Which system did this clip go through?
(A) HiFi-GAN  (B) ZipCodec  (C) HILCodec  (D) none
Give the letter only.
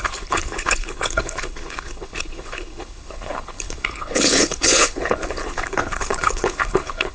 C